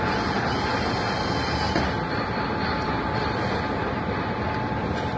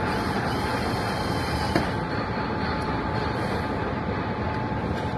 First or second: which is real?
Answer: first